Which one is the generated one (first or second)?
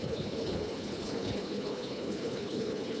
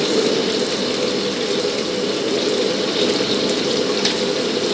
first